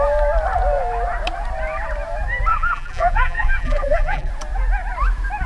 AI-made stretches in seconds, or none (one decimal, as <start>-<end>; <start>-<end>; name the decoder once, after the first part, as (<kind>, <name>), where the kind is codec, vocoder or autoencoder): 2.5-4.3 (vocoder, BigVGAN v2)